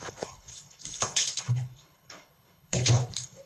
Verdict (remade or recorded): remade